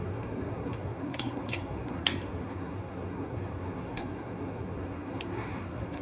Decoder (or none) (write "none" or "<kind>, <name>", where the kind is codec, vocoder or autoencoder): codec, SNAC